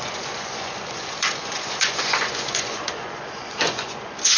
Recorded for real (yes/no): no